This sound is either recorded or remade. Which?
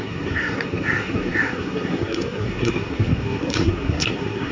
remade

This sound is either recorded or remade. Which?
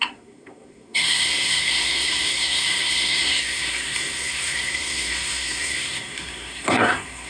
remade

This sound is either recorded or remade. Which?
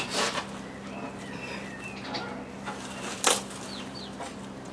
recorded